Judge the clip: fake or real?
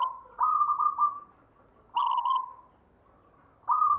real